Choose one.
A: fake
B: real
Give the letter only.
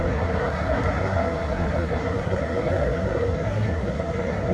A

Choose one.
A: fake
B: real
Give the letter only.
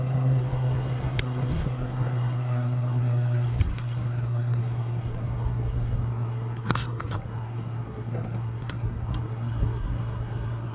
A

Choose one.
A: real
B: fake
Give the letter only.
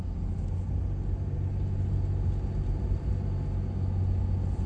A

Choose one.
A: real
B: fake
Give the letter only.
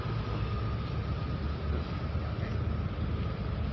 A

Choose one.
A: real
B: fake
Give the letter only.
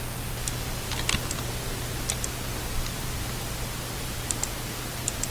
A